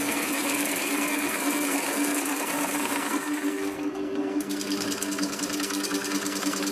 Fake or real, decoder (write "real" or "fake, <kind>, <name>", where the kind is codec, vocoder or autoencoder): fake, codec, SNAC